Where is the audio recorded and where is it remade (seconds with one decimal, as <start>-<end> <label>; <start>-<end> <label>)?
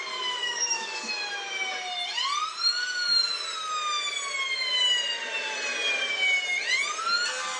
0.0-0.4 recorded; 0.4-1.1 remade; 1.1-7.6 recorded